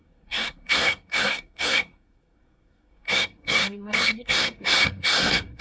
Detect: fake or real fake